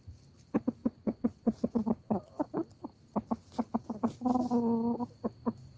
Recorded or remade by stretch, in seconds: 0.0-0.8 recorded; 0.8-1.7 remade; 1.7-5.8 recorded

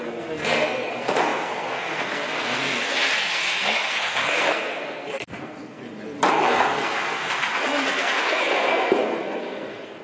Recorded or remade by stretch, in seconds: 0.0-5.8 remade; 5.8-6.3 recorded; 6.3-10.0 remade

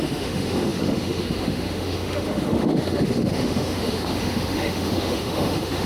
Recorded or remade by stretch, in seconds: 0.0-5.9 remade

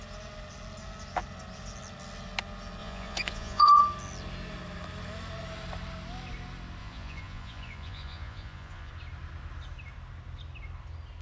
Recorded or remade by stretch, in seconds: 0.0-2.8 recorded; 2.8-3.8 remade; 3.8-6.8 recorded; 6.8-8.9 remade; 8.9-11.2 recorded

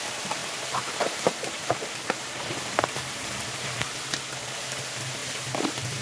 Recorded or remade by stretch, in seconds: 0.0-0.4 recorded; 0.4-4.0 remade; 4.0-5.2 recorded; 5.2-6.0 remade